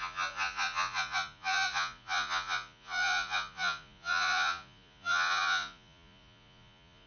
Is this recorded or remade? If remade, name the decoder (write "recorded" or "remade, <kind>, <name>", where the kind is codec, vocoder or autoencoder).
remade, vocoder, Vocos